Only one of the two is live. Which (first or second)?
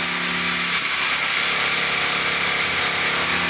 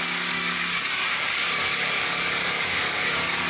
first